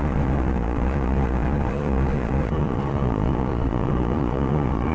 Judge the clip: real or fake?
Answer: fake